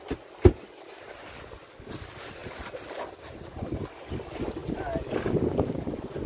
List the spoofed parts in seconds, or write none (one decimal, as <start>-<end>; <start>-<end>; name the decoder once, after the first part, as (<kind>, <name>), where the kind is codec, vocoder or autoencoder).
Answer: 2.4-3.7 (vocoder, BigVGAN v2)